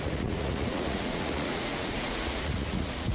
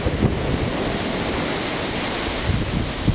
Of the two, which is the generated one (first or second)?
first